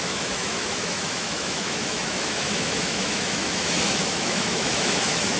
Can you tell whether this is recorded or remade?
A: remade